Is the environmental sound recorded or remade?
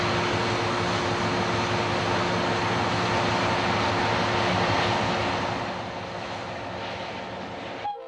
recorded